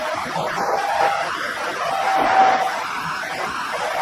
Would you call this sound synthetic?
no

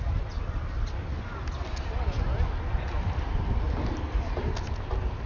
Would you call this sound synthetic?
no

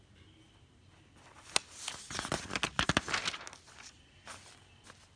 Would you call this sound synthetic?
no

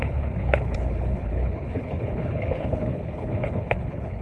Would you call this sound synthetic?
yes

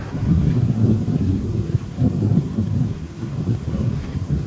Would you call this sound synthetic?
yes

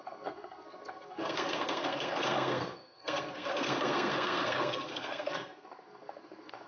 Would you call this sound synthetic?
yes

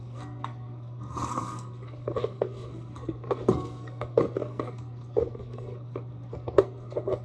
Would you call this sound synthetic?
yes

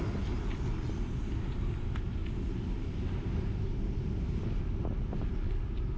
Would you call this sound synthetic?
no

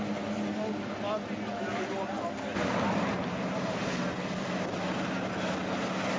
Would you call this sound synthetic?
no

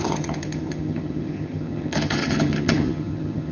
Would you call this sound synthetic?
yes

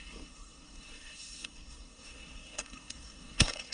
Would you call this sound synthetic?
yes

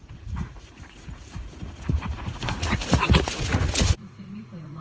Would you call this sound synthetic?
yes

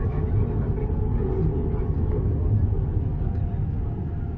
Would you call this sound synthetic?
no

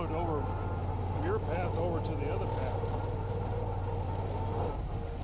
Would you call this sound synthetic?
no